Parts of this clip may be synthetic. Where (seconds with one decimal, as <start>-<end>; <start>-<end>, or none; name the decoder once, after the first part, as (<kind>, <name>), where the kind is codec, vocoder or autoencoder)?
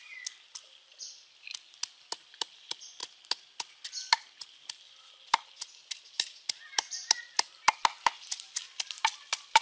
none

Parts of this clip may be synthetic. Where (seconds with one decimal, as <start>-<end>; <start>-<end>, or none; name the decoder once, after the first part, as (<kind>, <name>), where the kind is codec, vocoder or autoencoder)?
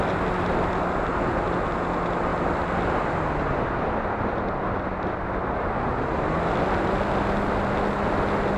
none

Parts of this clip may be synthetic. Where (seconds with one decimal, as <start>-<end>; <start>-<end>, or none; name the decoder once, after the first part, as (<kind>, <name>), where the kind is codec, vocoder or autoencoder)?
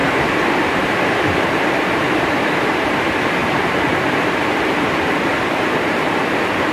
0.0-2.4 (vocoder, BigVGAN v2); 3.4-5.0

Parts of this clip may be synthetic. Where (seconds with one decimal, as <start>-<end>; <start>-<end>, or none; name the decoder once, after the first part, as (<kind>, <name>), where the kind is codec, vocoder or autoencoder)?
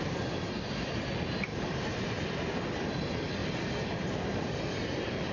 1.5-2.1 (vocoder, BigVGAN v2); 3.4-5.3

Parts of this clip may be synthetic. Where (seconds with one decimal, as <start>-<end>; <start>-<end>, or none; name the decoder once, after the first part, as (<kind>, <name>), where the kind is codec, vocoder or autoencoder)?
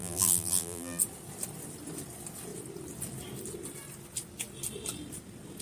0.0-1.0 (vocoder, BigVGAN v2)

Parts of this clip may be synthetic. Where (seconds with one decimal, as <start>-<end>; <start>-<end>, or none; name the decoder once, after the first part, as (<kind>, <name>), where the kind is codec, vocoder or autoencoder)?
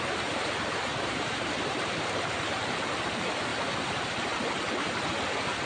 0.9-2.4 (vocoder, BigVGAN v2)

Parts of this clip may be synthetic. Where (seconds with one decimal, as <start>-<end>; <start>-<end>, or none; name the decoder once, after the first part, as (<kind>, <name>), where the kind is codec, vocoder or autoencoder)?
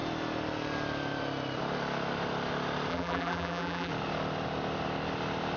2.9-3.9 (vocoder, BigVGAN v2)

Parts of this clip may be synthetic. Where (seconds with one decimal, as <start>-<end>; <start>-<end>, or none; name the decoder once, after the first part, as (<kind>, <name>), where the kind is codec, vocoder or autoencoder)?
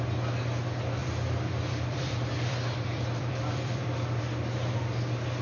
1.0-4.2 (vocoder, BigVGAN v2)